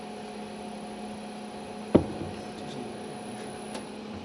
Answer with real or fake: real